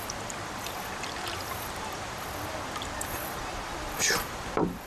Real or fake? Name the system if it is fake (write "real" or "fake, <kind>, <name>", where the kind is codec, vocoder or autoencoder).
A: fake, vocoder, BigVGAN v2